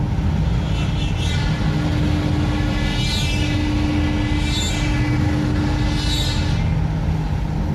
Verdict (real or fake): real